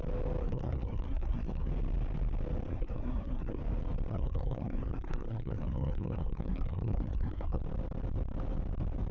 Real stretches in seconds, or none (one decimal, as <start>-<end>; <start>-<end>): 0.0-0.4; 1.7-2.7; 3.6-4.1; 7.6-9.1

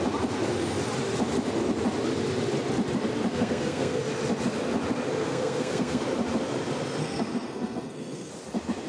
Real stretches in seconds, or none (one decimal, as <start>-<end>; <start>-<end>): 0.0-3.3; 4.0-5.2; 6.0-7.0; 8.3-8.9

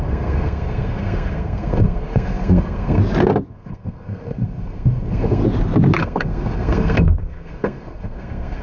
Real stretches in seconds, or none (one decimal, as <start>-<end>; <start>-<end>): 3.0-3.5; 5.4-6.0

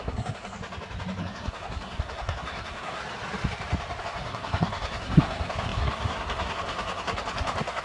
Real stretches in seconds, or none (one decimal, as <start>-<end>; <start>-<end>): 0.6-1.2; 3.0-4.0

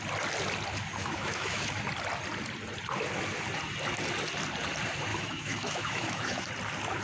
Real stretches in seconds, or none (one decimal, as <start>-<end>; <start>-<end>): 0.0-1.0; 1.7-5.1; 6.5-7.0

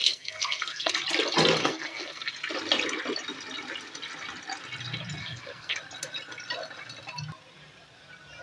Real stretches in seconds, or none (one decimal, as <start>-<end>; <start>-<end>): 0.9-1.6; 2.3-5.2; 5.8-8.4

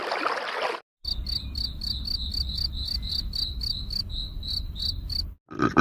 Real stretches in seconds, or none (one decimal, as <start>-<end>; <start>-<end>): 0.0-5.8